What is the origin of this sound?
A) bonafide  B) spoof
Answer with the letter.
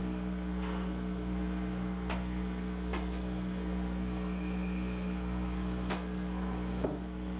B